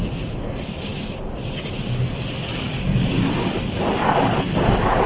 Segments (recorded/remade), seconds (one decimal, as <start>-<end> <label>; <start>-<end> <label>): 0.0-5.1 recorded